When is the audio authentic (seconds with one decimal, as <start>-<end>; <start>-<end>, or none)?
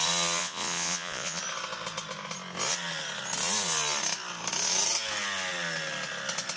0.0-0.4; 1.4-6.6